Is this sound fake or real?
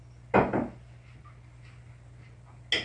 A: real